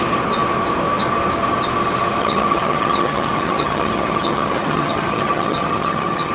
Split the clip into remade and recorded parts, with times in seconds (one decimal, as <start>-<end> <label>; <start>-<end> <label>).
0.0-2.2 recorded; 2.2-6.3 remade